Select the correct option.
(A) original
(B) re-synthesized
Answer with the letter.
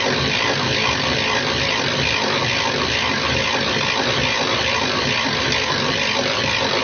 A